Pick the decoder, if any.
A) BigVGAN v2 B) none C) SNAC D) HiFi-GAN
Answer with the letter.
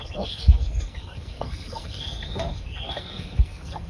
C